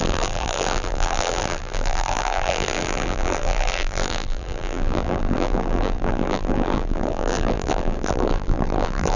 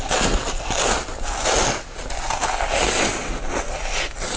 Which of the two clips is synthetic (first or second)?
first